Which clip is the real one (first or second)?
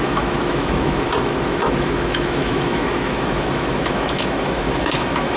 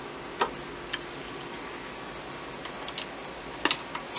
second